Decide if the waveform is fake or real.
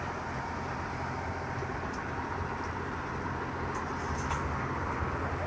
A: real